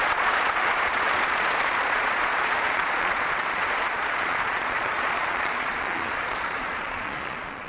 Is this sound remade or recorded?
remade